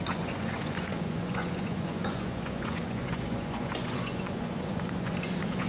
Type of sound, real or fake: fake